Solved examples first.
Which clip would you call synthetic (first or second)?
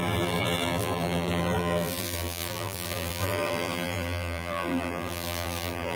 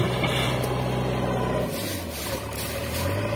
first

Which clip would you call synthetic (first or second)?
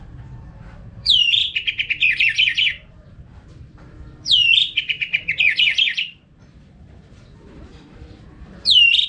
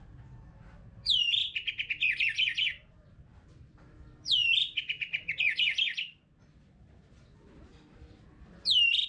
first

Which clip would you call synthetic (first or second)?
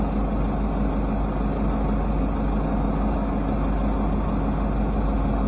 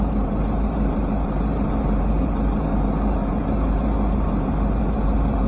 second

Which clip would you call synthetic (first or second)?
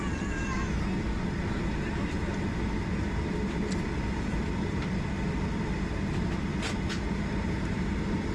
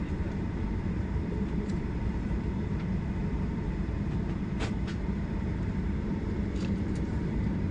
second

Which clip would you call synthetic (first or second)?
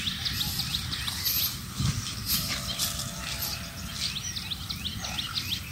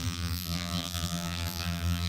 second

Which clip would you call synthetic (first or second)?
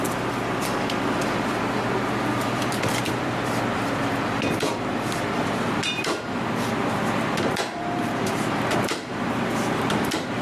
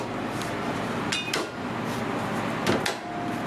first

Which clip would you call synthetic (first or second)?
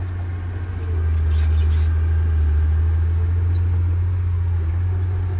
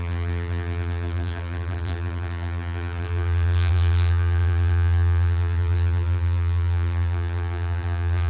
second